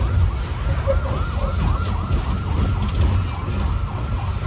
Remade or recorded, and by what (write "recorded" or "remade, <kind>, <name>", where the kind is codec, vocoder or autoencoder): recorded